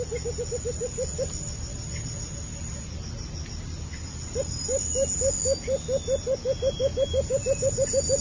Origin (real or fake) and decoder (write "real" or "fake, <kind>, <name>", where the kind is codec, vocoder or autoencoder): real